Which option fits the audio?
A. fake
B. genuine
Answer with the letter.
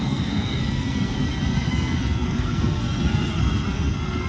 A